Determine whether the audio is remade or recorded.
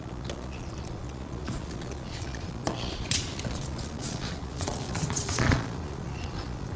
remade